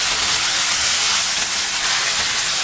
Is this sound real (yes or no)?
yes